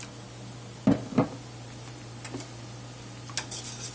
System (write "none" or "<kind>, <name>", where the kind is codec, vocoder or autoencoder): none